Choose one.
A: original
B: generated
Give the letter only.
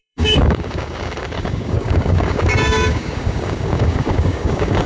B